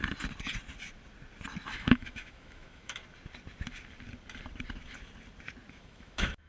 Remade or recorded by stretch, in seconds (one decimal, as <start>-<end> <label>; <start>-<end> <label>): 0.0-1.7 recorded; 1.7-3.0 remade; 3.0-5.7 recorded; 5.7-6.5 remade

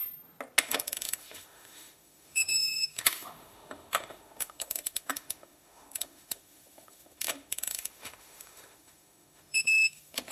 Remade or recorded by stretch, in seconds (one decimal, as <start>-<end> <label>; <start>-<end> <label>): 0.0-0.6 recorded; 0.6-10.3 remade

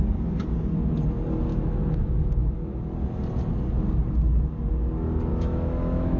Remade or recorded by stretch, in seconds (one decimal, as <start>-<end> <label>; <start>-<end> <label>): 0.0-1.5 recorded; 1.5-2.9 remade; 2.9-5.3 recorded; 5.3-6.2 remade

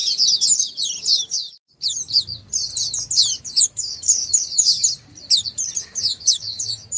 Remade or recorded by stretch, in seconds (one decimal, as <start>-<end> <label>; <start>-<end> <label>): 0.0-3.4 recorded; 3.4-4.8 remade; 4.8-5.8 recorded; 5.8-7.0 remade

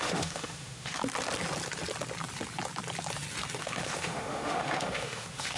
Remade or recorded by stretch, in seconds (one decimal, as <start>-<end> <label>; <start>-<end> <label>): 0.0-1.0 remade; 1.0-3.6 recorded; 3.6-5.6 remade

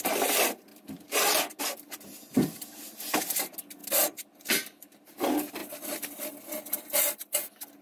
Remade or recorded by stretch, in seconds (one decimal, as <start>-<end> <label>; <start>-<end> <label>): 0.0-7.8 recorded

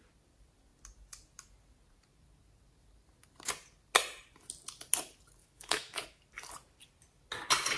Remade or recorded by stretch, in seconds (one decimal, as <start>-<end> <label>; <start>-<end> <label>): 0.0-5.4 recorded; 5.4-6.2 remade; 6.2-7.8 recorded

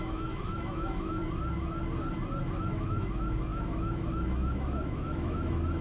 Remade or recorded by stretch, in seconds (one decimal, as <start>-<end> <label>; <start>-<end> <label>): 0.0-1.2 remade; 1.2-2.4 recorded; 2.4-5.8 remade